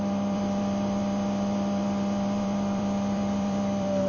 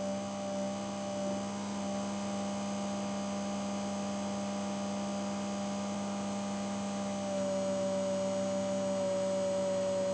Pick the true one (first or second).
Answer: second